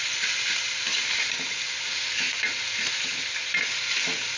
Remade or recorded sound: recorded